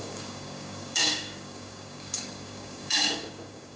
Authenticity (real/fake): fake